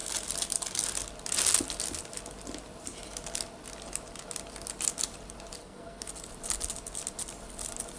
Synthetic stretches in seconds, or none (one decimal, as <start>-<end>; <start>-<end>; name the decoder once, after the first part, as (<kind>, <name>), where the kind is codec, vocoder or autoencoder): 5.6-6.1 (codec, SNAC)